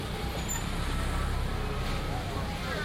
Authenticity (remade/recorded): recorded